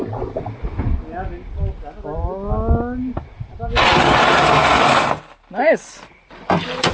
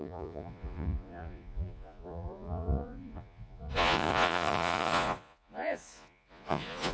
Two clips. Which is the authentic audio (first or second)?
first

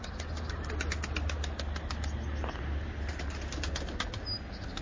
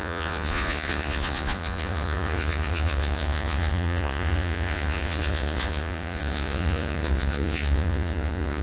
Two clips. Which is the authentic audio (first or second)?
first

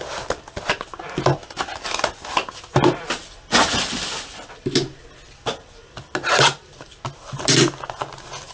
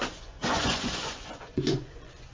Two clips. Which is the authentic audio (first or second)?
first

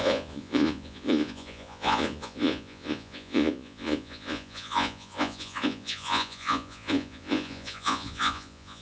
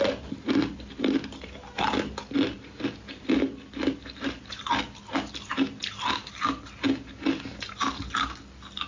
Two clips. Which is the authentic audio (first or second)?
second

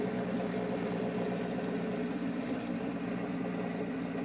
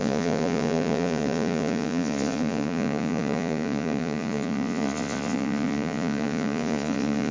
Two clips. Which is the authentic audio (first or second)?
first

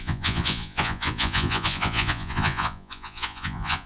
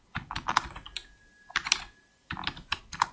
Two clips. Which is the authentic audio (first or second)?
second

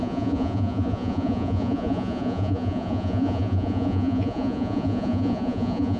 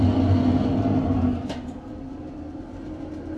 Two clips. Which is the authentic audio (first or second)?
second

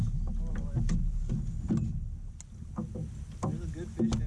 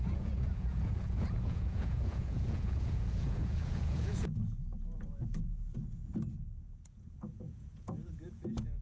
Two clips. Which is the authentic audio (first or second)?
first